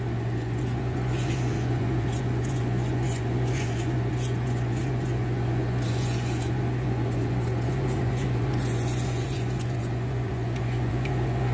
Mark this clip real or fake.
fake